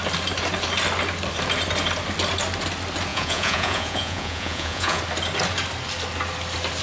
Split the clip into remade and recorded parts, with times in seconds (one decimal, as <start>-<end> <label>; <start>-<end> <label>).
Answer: 0.0-3.1 recorded; 3.1-5.0 remade; 5.0-6.8 recorded